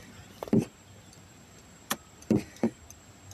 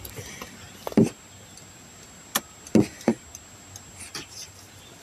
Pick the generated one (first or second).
first